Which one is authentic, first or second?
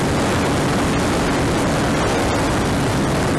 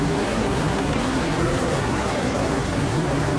first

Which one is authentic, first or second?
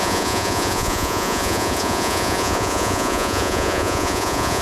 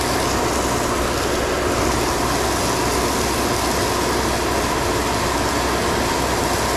second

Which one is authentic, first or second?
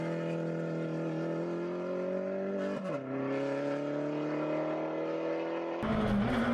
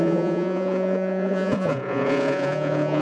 first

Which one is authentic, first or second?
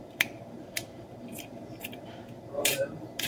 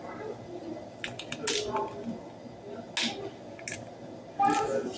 second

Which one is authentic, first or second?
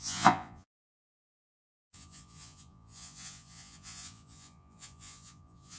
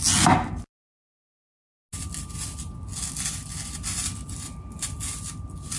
second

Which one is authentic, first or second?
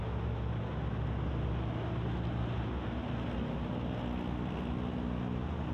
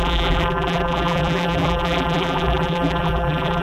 first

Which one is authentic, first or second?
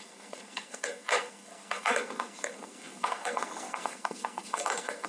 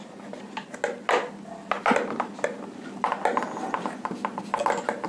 second